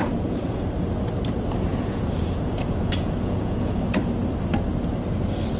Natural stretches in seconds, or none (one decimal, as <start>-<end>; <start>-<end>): 0.6-1.7; 3.9-5.6